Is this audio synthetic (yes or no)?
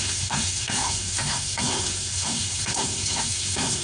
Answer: yes